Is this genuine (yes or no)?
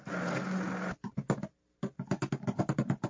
yes